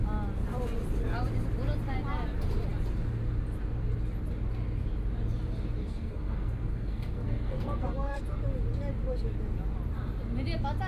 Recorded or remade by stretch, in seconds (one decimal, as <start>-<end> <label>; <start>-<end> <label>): 0.0-5.8 recorded; 5.8-8.2 remade; 8.2-10.9 recorded